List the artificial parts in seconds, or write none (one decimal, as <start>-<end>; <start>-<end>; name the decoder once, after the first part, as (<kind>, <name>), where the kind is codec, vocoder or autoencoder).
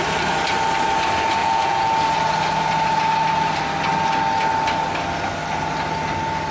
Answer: 1.4-1.9 (vocoder, Vocos)